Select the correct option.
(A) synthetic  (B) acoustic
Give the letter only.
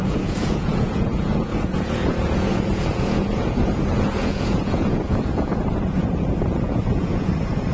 A